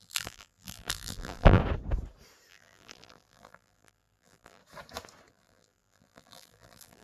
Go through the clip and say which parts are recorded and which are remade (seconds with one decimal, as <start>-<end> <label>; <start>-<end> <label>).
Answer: 0.0-1.6 remade; 1.6-2.5 recorded; 2.5-4.6 remade; 4.6-5.3 recorded; 5.3-7.0 remade